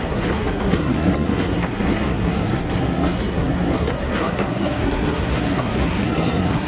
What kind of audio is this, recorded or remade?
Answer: remade